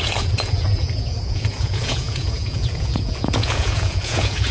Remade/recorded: remade